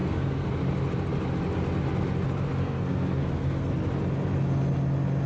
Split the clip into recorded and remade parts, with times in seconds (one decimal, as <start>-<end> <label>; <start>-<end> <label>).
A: 0.0-0.5 remade; 0.5-2.6 recorded; 2.6-3.7 remade; 3.7-5.3 recorded